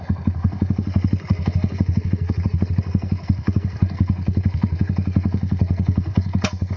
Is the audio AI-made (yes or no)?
yes